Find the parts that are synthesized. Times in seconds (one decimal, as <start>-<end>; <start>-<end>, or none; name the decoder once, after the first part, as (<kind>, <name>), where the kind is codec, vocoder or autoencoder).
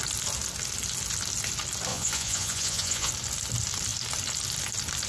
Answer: 1.9-3.1 (vocoder, Vocos)